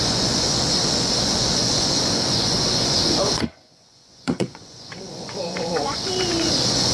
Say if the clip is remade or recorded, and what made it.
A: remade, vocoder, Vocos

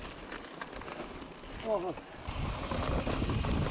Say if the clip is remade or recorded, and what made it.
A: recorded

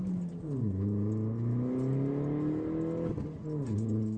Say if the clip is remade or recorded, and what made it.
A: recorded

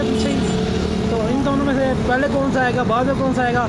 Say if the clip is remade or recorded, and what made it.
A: recorded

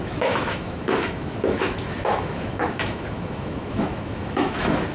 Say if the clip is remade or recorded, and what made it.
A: remade, autoencoder, DAC-VAE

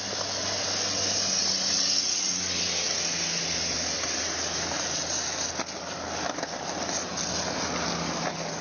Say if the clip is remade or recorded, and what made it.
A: recorded